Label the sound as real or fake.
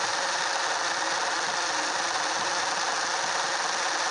real